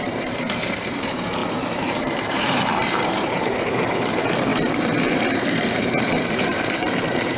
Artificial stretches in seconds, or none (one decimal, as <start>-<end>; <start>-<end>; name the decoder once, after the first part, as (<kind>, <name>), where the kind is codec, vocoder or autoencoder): 0.0-7.4 (vocoder, BigVGAN v2)